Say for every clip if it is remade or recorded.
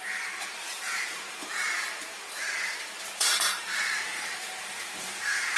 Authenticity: remade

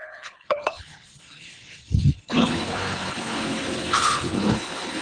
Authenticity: remade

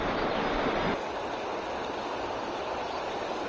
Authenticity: recorded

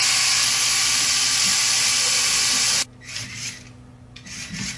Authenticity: recorded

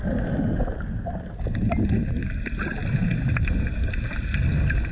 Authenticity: recorded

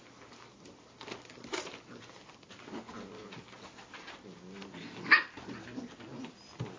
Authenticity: recorded